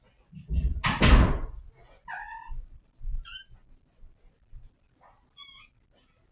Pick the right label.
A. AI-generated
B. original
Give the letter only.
B